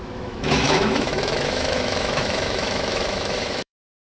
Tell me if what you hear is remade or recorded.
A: remade